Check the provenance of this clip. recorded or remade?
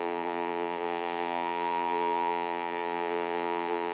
remade